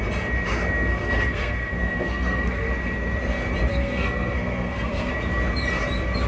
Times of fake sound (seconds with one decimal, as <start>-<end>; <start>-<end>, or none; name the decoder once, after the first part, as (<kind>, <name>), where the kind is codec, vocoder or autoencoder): 0.9-2.7 (codec, SNAC); 3.7-5.1